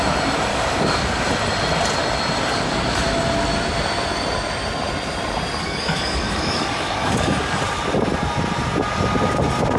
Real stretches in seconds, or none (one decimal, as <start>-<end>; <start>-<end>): 0.0-0.5; 1.2-2.5; 3.0-5.6; 7.6-9.8